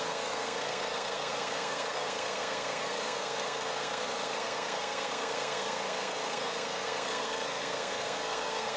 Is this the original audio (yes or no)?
no